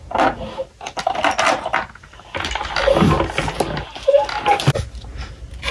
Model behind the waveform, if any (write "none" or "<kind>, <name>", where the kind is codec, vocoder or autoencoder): none